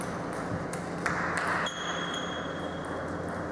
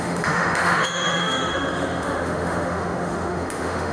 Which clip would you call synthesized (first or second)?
second